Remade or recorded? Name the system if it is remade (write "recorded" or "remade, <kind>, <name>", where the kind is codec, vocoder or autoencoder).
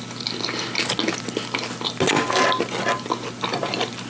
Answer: recorded